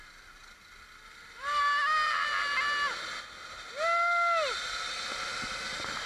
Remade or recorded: recorded